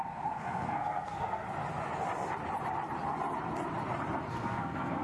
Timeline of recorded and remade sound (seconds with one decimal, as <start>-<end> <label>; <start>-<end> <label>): 0.0-1.4 remade; 1.4-4.3 recorded; 4.3-5.0 remade